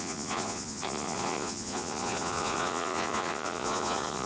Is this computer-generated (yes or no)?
yes